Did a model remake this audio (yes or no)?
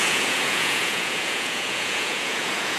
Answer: yes